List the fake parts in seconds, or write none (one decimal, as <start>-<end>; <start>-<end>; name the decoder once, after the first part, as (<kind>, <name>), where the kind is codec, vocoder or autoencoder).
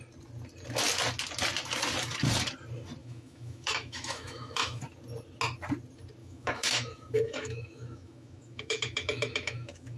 3.0-4.8 (autoencoder, DAC-VAE); 6.2-10.0